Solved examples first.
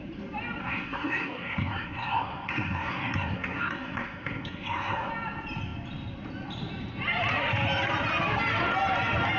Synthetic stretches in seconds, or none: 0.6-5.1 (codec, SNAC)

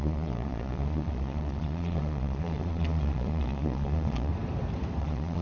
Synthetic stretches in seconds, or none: 0.0-4.3 (vocoder, Vocos); 5.0-5.4

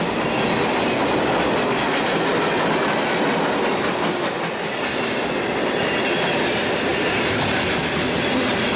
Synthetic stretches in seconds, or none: 0.0-2.3 (vocoder, BigVGAN v2); 6.3-6.9; 7.5-8.8

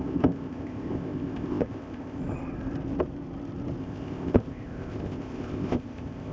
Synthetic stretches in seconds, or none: 0.0-2.2 (codec, ZipCodec); 3.8-6.3

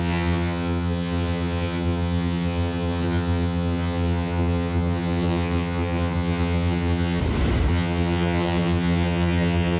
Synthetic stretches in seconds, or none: 0.0-7.2 (vocoder, HiFi-GAN); 7.7-9.8

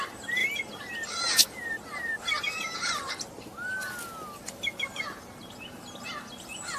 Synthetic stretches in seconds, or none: 0.4-3.3 (vocoder, BigVGAN v2)

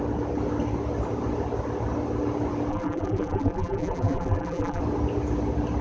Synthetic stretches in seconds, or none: 2.7-4.8 (vocoder, BigVGAN v2)